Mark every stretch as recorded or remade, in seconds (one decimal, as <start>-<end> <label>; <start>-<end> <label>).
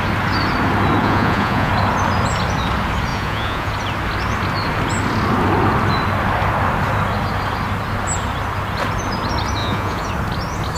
0.0-1.0 recorded; 1.0-1.7 remade; 1.7-3.1 recorded; 3.1-3.7 remade; 3.7-9.6 recorded; 9.6-10.1 remade; 10.1-10.8 recorded